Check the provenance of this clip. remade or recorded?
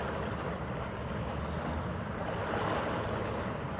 recorded